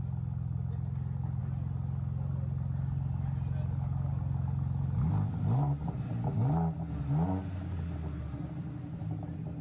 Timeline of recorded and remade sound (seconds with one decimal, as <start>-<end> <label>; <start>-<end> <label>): 0.0-9.6 recorded